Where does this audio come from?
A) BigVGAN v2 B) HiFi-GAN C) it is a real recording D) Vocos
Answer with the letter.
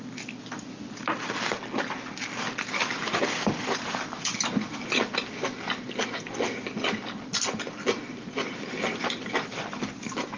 C